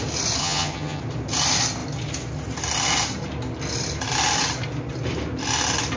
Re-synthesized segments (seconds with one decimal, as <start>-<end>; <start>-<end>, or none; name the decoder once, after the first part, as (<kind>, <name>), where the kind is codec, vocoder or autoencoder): 0.4-1.0 (vocoder, HiFi-GAN)